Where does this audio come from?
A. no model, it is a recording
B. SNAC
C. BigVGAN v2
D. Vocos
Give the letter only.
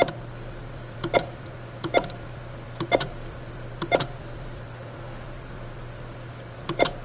C